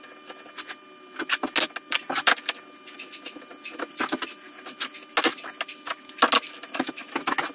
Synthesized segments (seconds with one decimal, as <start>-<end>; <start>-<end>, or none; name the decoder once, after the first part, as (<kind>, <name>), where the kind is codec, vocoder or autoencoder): none